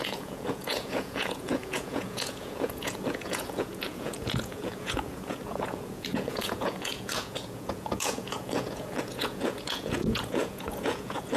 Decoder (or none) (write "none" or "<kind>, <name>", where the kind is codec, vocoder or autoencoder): vocoder, Vocos